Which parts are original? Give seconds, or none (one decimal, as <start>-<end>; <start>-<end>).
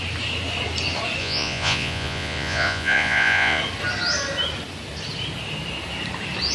0.0-1.2; 3.6-6.5